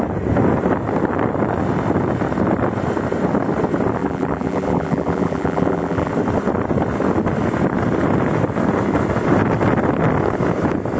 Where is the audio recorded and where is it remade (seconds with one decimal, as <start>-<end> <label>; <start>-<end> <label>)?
0.0-4.0 recorded; 4.0-6.1 remade; 6.1-11.0 recorded